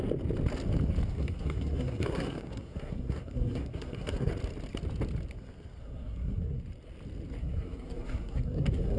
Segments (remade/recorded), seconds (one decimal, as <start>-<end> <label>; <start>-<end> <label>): 0.0-1.1 recorded; 1.1-4.3 remade; 4.3-5.8 recorded; 5.8-6.6 remade; 6.6-7.4 recorded; 7.4-9.0 remade